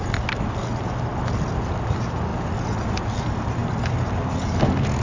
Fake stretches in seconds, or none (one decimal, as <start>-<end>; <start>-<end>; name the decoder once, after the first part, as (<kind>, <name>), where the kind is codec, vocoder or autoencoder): none